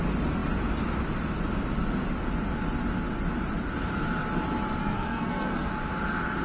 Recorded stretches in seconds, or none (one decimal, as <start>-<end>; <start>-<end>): 0.0-4.8; 5.7-6.4